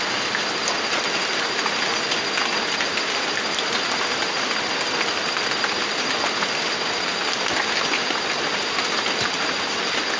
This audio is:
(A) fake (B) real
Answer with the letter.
B